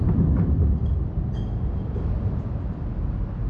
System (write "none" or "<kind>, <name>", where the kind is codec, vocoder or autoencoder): none